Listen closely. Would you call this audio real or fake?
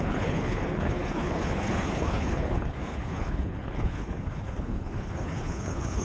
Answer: fake